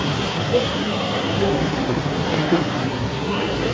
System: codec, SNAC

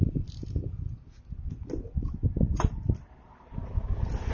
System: none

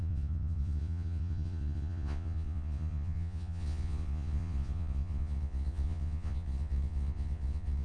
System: vocoder, Vocos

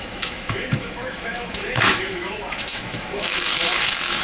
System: autoencoder, DAC-VAE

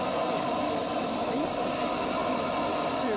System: none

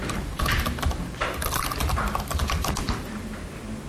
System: none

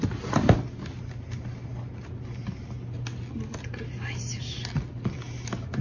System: none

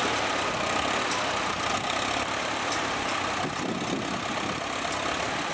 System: none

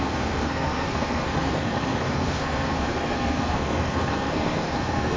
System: codec, SNAC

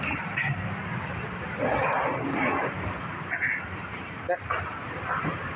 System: none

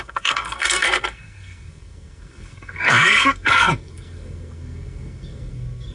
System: codec, SNAC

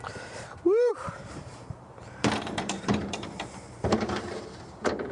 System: vocoder, BigVGAN v2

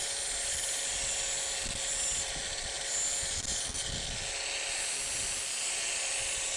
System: none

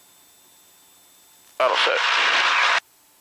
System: none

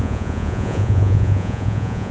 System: vocoder, Vocos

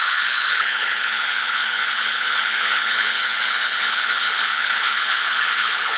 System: codec, HILCodec